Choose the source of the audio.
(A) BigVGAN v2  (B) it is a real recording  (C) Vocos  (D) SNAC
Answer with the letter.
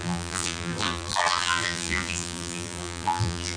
A